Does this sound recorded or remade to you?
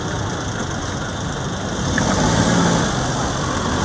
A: recorded